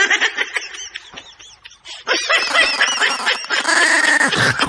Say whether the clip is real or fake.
real